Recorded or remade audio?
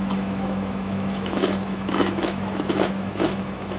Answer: remade